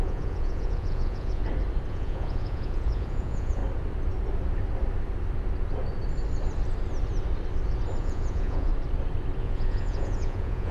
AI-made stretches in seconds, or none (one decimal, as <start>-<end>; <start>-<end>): 0.0-1.4; 1.9-3.6; 8.0-8.7; 9.4-10.7